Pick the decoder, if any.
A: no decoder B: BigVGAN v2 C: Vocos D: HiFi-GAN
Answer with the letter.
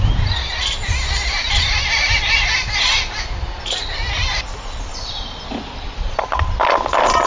A